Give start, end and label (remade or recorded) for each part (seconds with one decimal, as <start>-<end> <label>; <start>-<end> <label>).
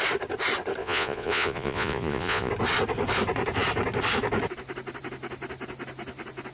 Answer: 0.0-0.8 recorded; 0.8-2.5 remade; 2.5-6.5 recorded